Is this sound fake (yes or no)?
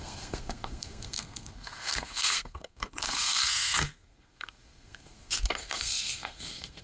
yes